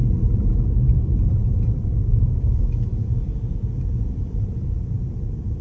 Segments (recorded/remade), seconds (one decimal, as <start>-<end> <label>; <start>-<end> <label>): 0.0-3.3 remade; 3.3-4.1 recorded; 4.1-5.6 remade